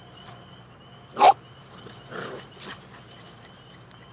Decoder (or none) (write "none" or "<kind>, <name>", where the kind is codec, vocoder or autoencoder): vocoder, BigVGAN v2